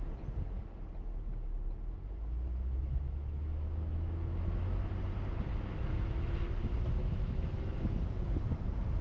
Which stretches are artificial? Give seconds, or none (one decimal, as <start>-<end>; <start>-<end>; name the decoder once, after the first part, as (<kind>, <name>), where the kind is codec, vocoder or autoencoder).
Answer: 2.5-4.9 (autoencoder, DAC-VAE); 5.5-6.3; 7.0-7.8

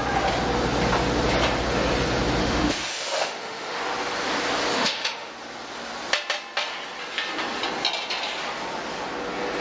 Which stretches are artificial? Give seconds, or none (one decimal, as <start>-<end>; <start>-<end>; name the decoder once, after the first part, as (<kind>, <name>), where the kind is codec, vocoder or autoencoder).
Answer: 2.4-3.8 (autoencoder, DAC-VAE); 4.7-5.3

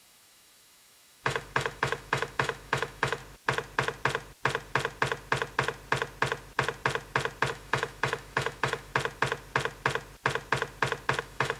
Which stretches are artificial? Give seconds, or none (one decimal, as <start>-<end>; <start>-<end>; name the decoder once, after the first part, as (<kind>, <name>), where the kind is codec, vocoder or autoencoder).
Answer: 0.0-3.2 (autoencoder, DAC-VAE); 7.5-8.9; 11.2-11.6

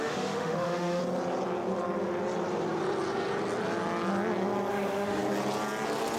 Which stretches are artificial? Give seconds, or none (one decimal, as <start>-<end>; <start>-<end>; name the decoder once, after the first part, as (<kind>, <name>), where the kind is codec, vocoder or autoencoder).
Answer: 0.0-1.0 (autoencoder, DAC-VAE); 4.7-5.2

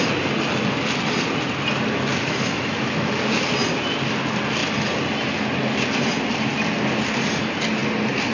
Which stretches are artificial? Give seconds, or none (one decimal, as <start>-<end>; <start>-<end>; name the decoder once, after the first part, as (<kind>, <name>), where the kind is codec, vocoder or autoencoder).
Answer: 2.1-3.1 (autoencoder, DAC-VAE)

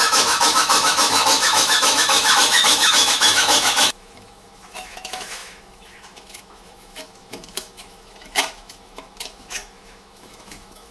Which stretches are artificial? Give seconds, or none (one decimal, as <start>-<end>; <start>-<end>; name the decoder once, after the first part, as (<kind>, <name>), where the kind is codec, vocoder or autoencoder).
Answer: 0.0-10.9 (autoencoder, DAC-VAE)

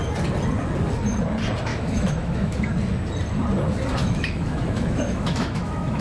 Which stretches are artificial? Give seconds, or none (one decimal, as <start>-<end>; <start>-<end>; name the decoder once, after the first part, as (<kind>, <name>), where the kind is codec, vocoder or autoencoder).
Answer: 1.7-2.6 (autoencoder, DAC-VAE); 4.0-6.0

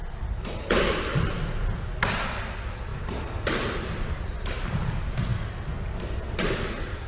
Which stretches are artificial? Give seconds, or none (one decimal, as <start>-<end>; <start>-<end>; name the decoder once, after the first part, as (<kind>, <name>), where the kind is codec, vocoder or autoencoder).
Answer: none